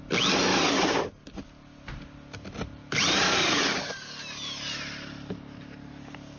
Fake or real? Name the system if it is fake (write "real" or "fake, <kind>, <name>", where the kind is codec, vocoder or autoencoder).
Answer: real